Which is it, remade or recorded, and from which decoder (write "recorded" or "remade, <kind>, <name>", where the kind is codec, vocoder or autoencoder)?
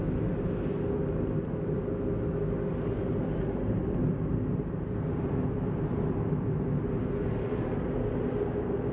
recorded